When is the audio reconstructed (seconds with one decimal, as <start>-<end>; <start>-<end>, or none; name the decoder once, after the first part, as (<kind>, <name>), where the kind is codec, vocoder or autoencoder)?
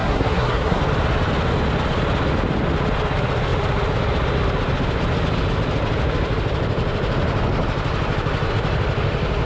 0.0-0.8 (codec, SNAC)